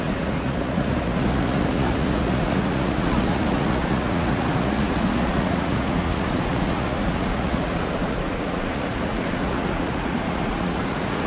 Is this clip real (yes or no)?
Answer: no